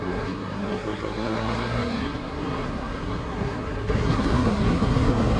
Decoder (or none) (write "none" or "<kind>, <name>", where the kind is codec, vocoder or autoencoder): codec, SNAC